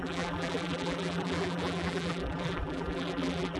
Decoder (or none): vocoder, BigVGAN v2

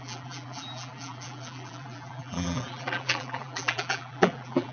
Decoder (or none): vocoder, BigVGAN v2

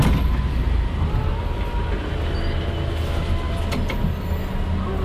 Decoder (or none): none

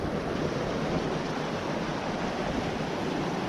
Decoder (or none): none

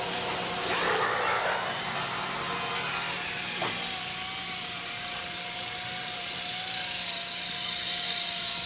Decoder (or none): none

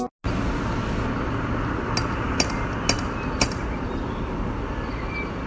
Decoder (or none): none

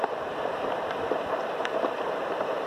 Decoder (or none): vocoder, BigVGAN v2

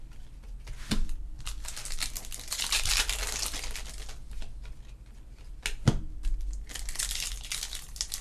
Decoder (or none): none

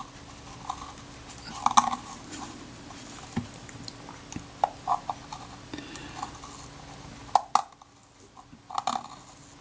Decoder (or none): none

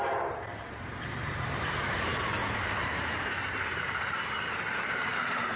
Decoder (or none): vocoder, BigVGAN v2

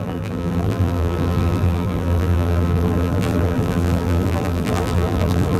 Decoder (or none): vocoder, BigVGAN v2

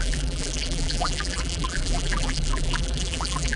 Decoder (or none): vocoder, BigVGAN v2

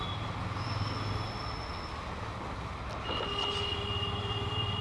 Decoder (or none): none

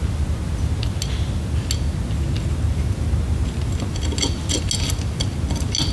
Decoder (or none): none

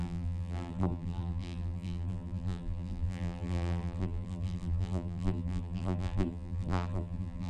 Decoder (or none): vocoder, BigVGAN v2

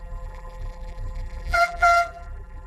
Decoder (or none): vocoder, BigVGAN v2